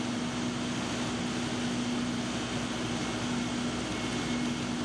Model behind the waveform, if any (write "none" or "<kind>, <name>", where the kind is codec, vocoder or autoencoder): none